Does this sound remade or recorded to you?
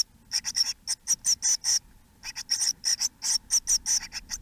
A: recorded